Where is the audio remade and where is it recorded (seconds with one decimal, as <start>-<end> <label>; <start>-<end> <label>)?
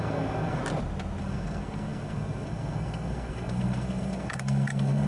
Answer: 0.0-0.6 remade; 0.6-1.2 recorded; 1.2-5.1 remade